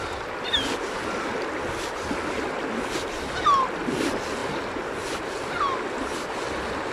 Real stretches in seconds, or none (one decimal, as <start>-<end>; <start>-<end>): 0.0-6.9